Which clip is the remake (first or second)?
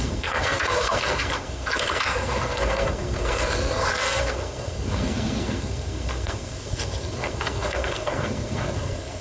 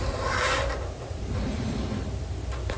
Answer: first